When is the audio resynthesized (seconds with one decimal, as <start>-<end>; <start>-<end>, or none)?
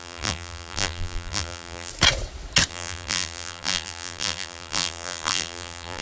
0.0-1.9; 2.7-6.0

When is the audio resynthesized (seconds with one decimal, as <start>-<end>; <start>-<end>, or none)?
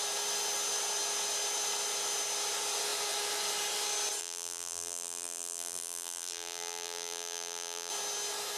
4.2-7.9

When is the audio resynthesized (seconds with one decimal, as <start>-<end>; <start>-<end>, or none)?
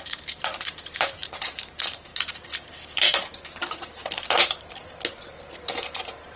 0.0-2.1; 3.6-6.4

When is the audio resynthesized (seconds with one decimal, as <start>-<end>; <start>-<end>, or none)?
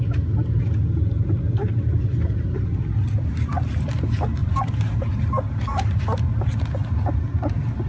4.4-6.0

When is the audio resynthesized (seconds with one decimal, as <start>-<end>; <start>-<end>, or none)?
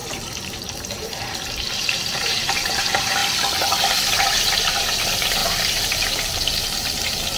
0.9-3.2; 4.8-7.4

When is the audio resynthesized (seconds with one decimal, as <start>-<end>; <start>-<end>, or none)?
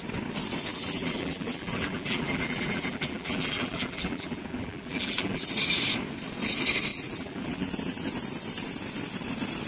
0.7-5.5; 6.9-8.1